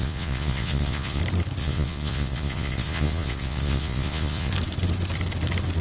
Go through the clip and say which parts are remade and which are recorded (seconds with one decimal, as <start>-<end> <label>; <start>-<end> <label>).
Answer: 0.0-1.2 remade; 1.2-1.6 recorded; 1.6-4.5 remade; 4.5-5.8 recorded